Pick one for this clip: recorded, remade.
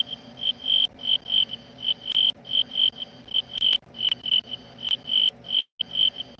recorded